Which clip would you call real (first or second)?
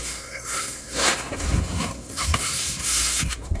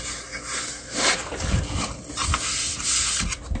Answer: second